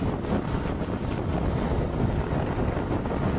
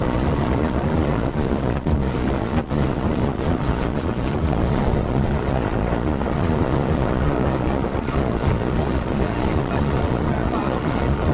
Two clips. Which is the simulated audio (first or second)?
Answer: second